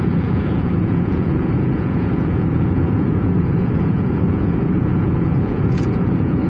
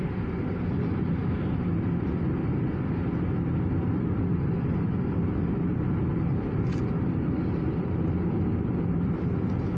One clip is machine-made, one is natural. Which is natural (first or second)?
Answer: second